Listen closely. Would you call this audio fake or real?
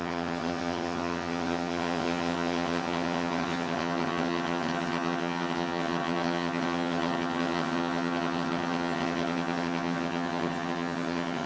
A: fake